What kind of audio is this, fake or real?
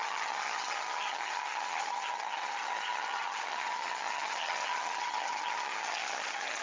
fake